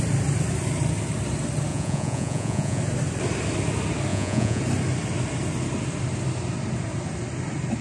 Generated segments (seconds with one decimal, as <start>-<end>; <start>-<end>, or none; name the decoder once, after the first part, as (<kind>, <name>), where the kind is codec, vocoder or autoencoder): 1.7-2.8 (vocoder, Vocos); 4.1-4.6

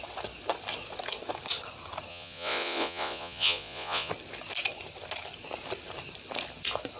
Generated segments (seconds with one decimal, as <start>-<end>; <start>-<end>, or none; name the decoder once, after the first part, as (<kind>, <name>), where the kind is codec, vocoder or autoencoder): 2.1-4.1 (vocoder, Vocos)

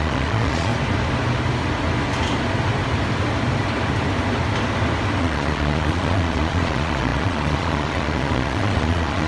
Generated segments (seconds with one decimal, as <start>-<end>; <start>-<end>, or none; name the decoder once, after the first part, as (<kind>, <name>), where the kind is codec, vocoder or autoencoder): 0.0-0.7 (vocoder, Vocos); 5.2-9.3

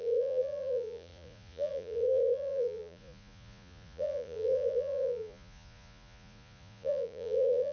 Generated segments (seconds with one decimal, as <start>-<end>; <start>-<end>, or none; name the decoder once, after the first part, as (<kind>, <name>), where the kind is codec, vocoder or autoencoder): 0.0-7.7 (vocoder, Vocos)

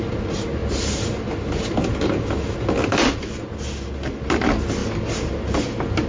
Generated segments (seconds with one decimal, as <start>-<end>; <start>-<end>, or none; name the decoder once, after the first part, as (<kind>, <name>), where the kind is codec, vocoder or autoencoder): none

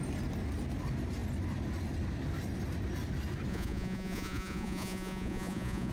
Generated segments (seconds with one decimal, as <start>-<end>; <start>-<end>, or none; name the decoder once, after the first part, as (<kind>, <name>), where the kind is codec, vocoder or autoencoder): 3.5-5.9 (vocoder, Vocos)